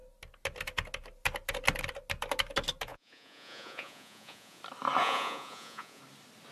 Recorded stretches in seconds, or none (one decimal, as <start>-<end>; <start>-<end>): 0.0-2.9; 4.6-5.0; 6.0-6.5